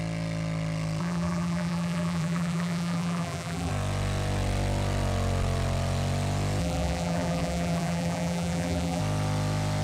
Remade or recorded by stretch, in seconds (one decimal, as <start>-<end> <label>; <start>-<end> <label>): 0.0-1.0 recorded; 1.0-3.7 remade; 3.7-6.6 recorded; 6.6-9.0 remade; 9.0-9.8 recorded

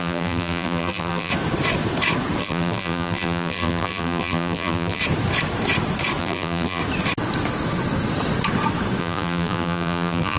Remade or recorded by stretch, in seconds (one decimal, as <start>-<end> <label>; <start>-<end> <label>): 0.0-1.3 remade; 1.3-2.4 recorded; 2.4-5.0 remade; 5.0-6.2 recorded; 6.2-6.8 remade; 6.8-9.0 recorded; 9.0-10.4 remade

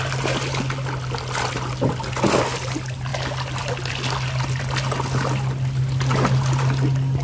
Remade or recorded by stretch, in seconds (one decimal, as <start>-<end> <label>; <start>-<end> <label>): 0.0-7.2 recorded